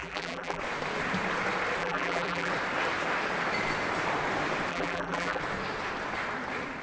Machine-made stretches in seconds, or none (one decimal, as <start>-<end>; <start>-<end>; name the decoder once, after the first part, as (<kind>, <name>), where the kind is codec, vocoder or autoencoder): 0.0-0.6 (vocoder, BigVGAN v2); 1.8-2.5; 4.7-5.4